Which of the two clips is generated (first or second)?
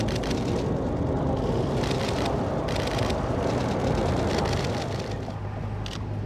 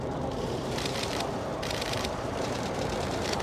second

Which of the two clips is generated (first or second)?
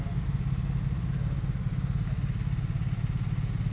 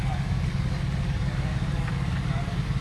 second